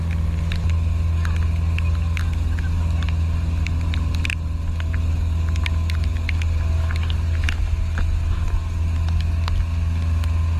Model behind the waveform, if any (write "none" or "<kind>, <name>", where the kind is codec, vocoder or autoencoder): none